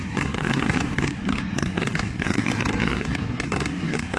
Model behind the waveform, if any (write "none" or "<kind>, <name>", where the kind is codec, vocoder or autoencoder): codec, SNAC